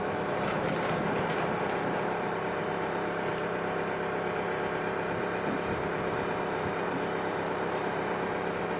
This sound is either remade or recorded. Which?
remade